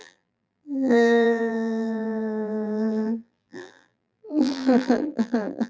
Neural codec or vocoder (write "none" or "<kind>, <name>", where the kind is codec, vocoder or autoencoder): vocoder, BigVGAN v2